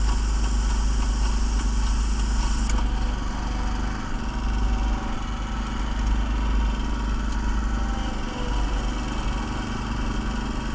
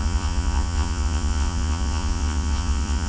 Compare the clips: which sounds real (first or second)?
first